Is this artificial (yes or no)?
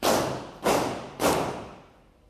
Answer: no